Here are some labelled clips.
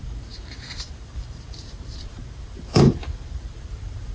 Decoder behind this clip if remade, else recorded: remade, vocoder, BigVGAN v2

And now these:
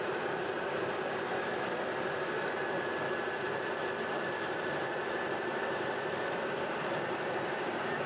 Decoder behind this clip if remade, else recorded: remade, vocoder, BigVGAN v2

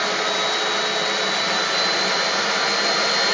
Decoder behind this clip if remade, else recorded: recorded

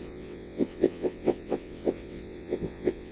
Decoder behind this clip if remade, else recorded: remade, vocoder, WaveNeXt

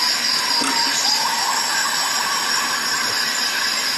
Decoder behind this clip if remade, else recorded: recorded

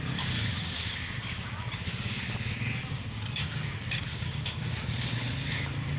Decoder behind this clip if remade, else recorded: remade, codec, DAC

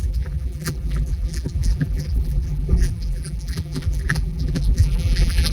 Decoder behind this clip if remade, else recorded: remade, vocoder, BigVGAN v2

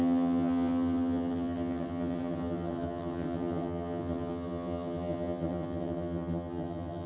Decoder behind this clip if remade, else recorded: remade, vocoder, HiFi-GAN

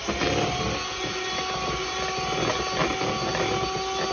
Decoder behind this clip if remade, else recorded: recorded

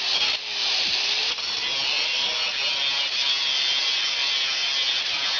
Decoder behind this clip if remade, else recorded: recorded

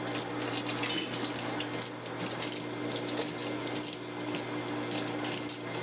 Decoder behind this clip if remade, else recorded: recorded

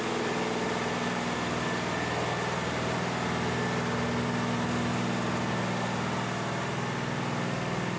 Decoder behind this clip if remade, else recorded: recorded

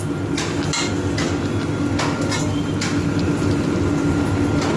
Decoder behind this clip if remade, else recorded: recorded